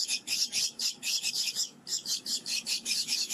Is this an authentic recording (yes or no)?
no